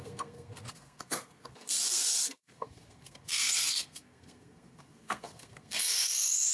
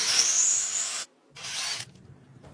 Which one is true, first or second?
second